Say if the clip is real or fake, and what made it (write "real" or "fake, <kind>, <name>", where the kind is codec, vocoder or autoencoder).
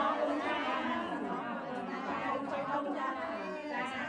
fake, vocoder, Vocos